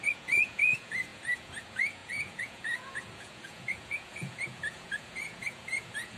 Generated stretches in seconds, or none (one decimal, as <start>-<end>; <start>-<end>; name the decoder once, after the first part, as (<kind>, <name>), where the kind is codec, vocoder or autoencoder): 0.0-6.2 (vocoder, Vocos)